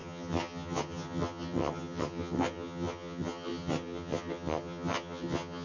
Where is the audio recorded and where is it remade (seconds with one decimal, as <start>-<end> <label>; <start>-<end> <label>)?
0.0-5.6 remade